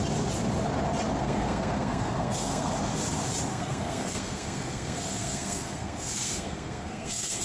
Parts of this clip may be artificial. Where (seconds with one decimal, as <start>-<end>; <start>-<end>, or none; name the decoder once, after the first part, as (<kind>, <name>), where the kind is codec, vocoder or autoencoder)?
1.2-2.7 (codec, SNAC); 3.5-7.4